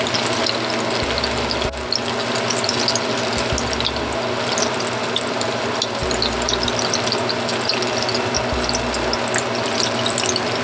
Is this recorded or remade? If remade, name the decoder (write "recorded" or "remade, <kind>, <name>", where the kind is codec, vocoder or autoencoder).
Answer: recorded